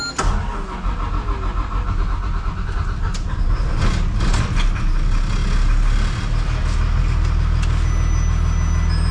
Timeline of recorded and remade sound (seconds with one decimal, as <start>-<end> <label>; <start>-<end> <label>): 0.0-9.1 recorded